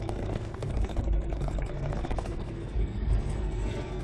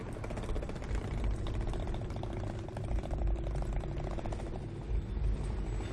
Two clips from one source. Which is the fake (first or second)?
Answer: first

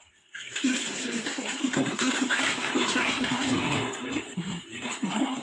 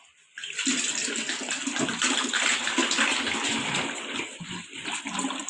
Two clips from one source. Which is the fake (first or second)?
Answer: first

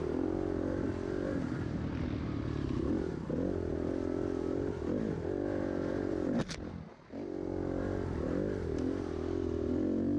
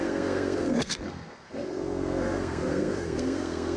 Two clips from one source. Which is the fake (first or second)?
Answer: second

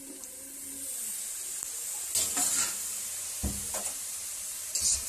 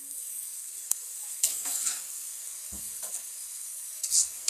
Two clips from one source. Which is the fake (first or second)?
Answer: second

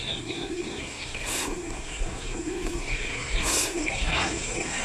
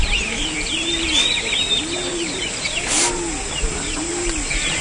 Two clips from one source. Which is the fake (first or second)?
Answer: first